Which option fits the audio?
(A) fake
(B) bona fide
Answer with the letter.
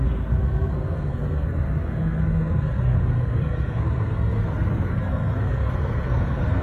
A